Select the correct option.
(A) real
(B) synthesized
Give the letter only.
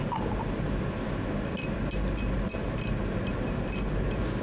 A